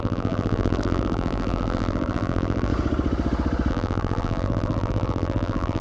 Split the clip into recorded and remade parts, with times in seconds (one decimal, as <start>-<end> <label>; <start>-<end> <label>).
0.0-2.7 remade; 2.7-3.7 recorded; 3.7-5.8 remade